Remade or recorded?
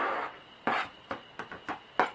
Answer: recorded